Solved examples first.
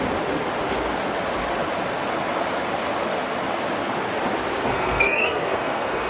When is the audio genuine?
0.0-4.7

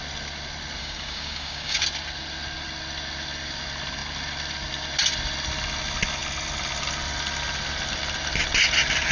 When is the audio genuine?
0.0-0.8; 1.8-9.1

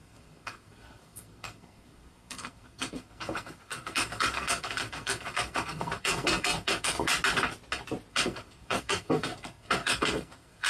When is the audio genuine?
7.1-8.1

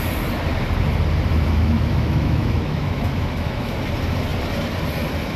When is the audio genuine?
0.0-1.3; 3.7-5.4

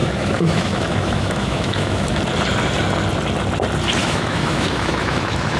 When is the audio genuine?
2.2-4.0

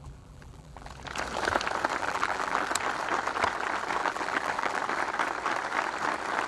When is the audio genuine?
0.9-2.0; 2.7-4.0; 4.8-6.5